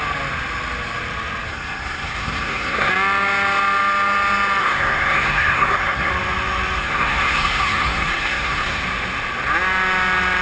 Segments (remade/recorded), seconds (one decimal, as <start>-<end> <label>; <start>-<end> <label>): 0.0-1.5 recorded; 1.5-2.9 remade; 2.9-4.6 recorded; 4.6-6.1 remade; 6.1-6.8 recorded; 6.8-8.8 remade; 8.8-10.4 recorded